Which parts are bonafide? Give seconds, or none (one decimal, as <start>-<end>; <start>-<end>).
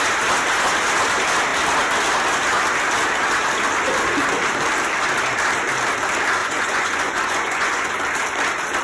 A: 0.0-6.4; 7.9-8.8